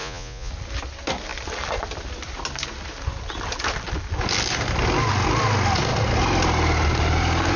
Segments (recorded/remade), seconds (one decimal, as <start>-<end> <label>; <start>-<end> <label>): 0.0-0.5 remade; 0.5-7.6 recorded